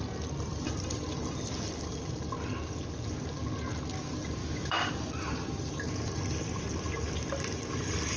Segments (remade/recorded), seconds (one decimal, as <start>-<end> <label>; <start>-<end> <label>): 0.0-4.4 recorded; 4.4-4.9 remade; 4.9-8.2 recorded